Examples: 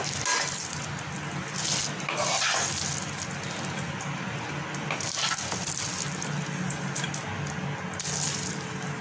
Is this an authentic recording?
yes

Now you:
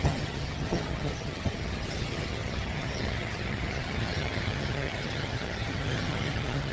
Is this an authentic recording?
no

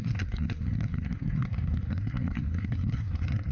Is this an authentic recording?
no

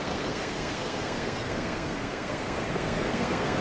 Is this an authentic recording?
no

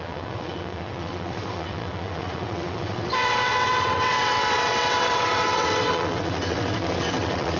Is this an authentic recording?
no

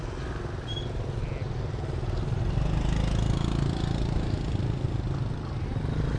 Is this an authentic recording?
yes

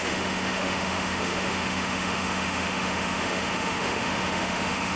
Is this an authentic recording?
no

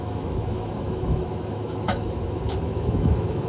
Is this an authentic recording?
no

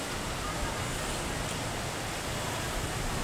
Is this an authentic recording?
yes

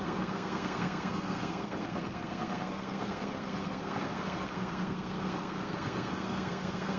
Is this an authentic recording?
no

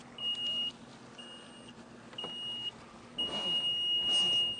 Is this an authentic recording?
yes